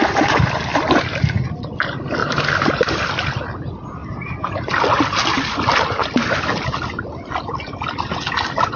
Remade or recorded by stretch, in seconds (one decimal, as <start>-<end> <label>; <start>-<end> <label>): 0.0-0.7 recorded; 0.7-1.4 remade; 1.4-2.2 recorded; 2.2-3.1 remade; 3.1-4.0 recorded; 4.0-4.8 remade; 4.8-6.0 recorded; 6.0-6.6 remade; 6.6-8.8 recorded